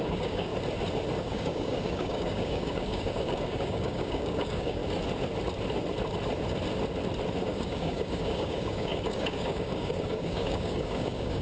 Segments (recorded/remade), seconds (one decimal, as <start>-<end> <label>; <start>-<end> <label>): 0.0-0.5 remade; 0.5-1.2 recorded; 1.2-4.8 remade; 4.8-7.4 recorded; 7.4-11.4 remade